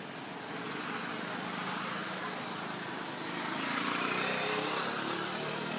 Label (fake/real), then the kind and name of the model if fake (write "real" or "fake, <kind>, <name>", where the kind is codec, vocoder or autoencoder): real